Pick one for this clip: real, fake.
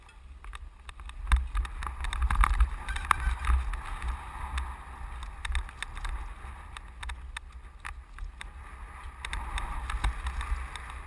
real